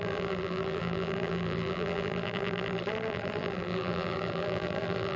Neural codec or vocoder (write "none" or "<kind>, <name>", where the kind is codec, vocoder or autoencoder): vocoder, BigVGAN v2